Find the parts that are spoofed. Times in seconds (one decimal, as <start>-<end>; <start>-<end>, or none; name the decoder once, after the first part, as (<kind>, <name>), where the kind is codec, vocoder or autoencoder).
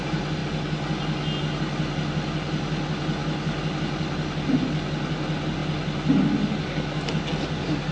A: none